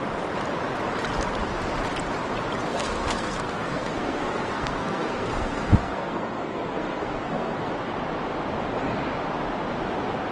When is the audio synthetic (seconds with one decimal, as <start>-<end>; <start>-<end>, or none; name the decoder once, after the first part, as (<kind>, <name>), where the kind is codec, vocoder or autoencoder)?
2.7-7.7 (codec, SNAC)